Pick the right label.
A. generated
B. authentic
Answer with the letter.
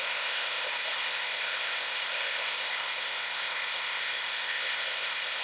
A